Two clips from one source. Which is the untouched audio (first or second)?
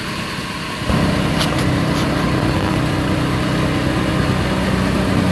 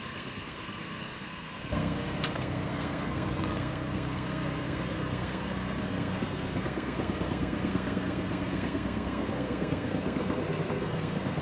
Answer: first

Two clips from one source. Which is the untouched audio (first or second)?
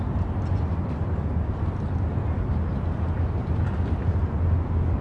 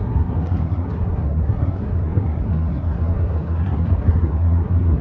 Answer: first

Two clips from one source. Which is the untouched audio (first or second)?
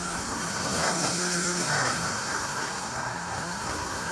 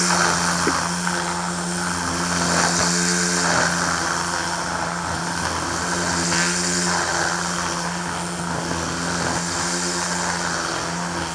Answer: second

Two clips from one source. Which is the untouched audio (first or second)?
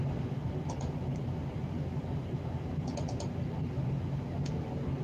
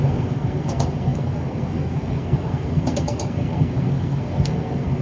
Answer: first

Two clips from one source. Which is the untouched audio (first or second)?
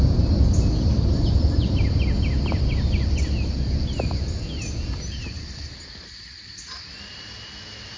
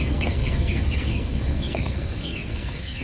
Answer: first